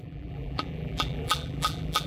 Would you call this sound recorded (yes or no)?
no